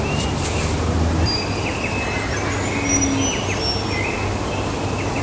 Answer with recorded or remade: recorded